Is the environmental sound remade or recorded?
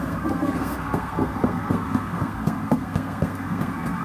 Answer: remade